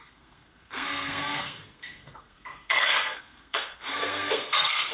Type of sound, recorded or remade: remade